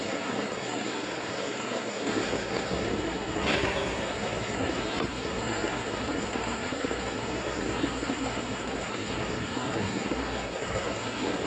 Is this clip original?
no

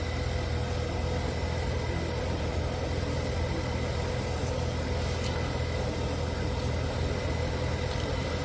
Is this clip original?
yes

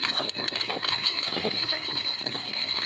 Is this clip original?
no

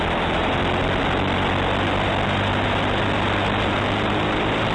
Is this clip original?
yes